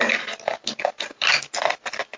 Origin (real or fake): real